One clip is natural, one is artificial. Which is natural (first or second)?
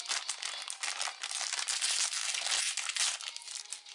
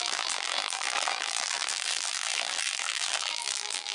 first